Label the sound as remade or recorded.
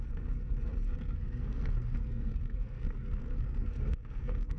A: remade